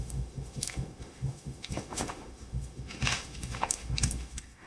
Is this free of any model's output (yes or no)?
no